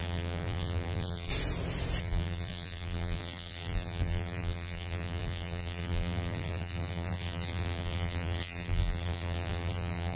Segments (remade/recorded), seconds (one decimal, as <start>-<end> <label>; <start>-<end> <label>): 0.0-1.3 remade; 1.3-2.0 recorded; 2.0-10.2 remade